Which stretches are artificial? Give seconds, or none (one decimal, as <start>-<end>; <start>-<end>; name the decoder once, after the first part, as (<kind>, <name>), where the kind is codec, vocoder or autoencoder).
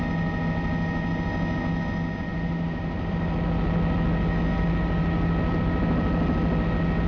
none